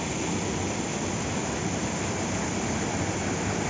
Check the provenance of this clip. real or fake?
real